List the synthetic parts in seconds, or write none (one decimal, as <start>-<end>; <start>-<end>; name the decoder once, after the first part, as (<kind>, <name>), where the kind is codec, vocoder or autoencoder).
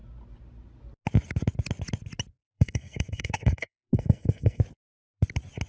2.4-4.6 (codec, SNAC)